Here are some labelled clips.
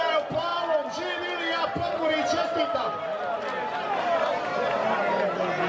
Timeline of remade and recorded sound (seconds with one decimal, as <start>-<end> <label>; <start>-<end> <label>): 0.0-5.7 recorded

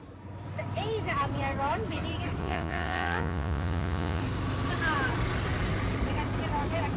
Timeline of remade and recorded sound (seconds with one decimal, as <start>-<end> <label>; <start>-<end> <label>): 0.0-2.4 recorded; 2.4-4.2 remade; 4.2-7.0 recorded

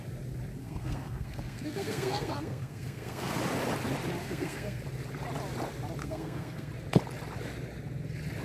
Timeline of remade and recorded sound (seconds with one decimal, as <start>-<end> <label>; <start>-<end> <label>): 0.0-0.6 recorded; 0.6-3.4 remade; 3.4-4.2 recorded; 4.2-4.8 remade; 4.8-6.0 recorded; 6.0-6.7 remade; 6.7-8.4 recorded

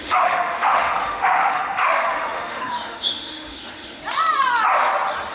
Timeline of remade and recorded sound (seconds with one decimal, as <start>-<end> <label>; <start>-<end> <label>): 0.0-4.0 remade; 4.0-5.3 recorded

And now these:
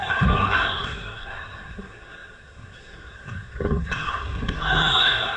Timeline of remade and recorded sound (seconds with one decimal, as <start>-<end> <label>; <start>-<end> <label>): 0.0-5.4 remade

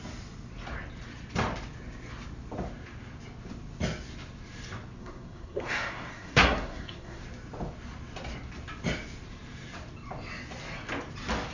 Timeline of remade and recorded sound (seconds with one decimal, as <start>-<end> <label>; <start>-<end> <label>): 0.0-5.0 recorded; 5.0-7.2 remade; 7.2-11.5 recorded

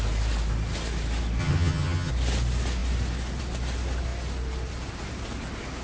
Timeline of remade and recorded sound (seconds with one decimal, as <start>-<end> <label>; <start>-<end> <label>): 0.0-1.4 recorded; 1.4-2.1 remade; 2.1-5.8 recorded

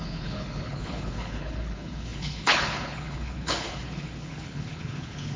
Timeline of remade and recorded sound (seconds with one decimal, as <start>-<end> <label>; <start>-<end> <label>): 0.0-5.4 remade